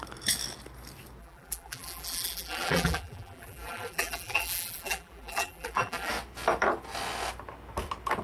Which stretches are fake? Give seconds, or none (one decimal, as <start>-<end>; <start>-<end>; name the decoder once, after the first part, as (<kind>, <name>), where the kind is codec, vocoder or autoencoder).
1.2-6.1 (vocoder, BigVGAN v2)